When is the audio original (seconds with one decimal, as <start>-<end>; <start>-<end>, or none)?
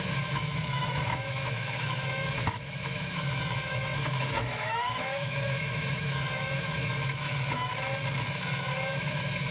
7.7-8.3